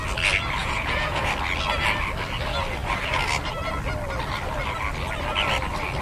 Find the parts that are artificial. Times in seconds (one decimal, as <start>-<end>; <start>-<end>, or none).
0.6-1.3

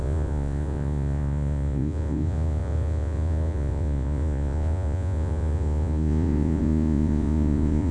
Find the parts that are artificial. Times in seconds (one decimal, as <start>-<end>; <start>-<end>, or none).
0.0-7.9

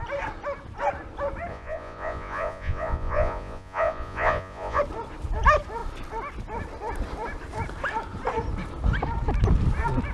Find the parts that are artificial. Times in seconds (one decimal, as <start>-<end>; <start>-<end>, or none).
1.5-4.8

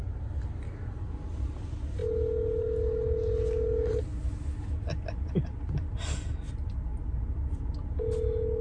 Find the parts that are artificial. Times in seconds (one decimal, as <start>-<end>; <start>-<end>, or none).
none